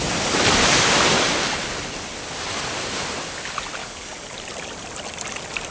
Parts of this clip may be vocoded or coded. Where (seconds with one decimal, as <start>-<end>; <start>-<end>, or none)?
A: 3.8-4.3